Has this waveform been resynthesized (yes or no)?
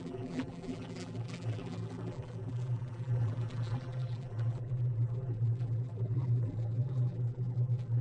yes